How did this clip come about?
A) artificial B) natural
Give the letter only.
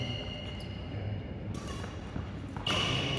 B